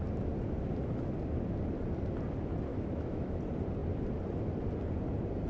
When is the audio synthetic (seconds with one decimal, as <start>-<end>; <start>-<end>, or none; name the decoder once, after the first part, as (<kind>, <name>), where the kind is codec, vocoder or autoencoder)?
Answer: 2.7-3.4 (autoencoder, DAC-VAE)